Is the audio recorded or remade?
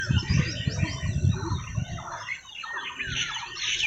recorded